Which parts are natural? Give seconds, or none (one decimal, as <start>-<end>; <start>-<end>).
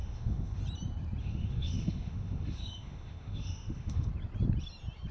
0.6-1.2; 4.1-5.1